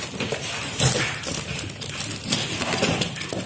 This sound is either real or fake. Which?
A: real